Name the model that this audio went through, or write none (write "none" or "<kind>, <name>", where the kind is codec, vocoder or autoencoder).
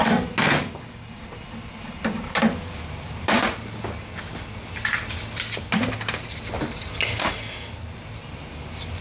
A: none